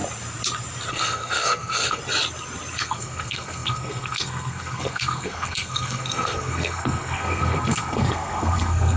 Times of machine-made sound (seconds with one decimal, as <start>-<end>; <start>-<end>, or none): 0.9-2.0; 2.8-9.0